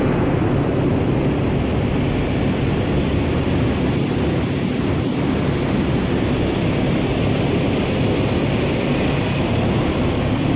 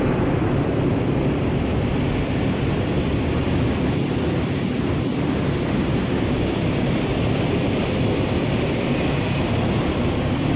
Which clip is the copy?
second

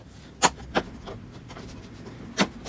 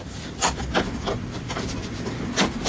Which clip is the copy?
second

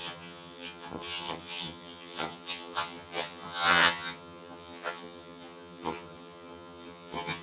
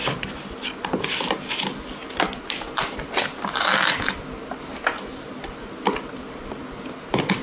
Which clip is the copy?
first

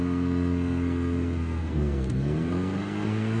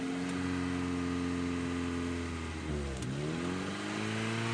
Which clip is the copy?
first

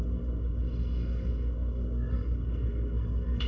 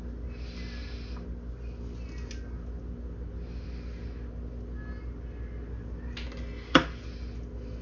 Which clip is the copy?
first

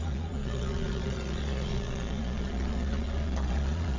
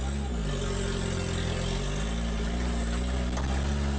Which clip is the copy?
first